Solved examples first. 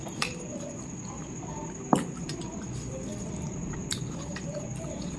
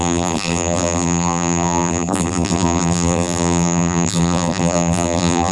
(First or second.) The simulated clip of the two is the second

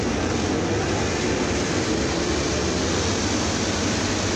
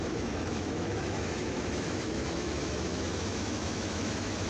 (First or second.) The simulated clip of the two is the second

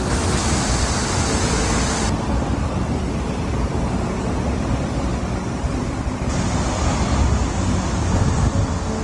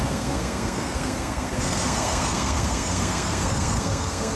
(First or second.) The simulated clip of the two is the second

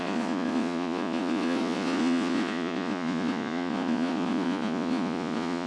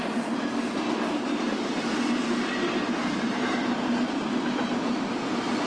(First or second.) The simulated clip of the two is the first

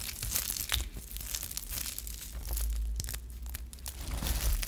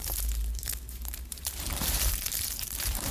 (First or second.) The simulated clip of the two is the second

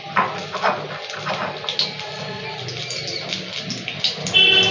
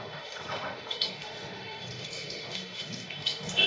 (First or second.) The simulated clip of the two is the second